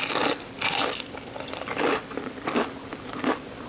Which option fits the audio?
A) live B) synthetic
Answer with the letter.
B